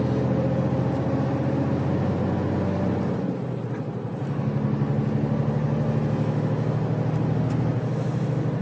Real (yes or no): yes